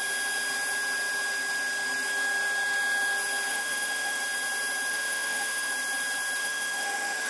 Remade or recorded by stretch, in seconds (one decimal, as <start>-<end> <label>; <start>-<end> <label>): 0.0-3.5 recorded; 3.5-4.2 remade; 4.2-4.9 recorded; 4.9-5.7 remade; 5.7-6.4 recorded; 6.4-7.3 remade